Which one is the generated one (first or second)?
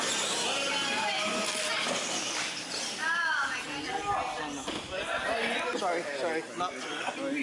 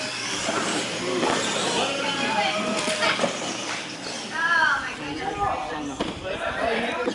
second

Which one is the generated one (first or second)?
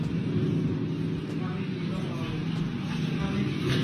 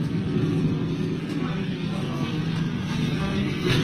second